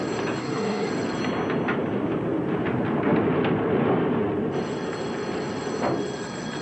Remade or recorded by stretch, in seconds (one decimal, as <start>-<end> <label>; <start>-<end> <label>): 0.0-0.4 recorded; 0.4-0.9 remade; 0.9-6.6 recorded